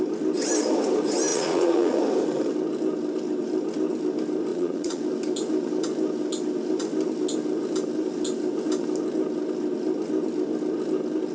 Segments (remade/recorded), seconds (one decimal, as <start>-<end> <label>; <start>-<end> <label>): 0.0-1.3 recorded; 1.3-2.0 remade; 2.0-4.5 recorded; 4.5-5.0 remade; 5.0-11.3 recorded